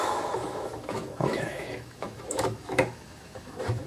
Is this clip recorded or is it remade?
remade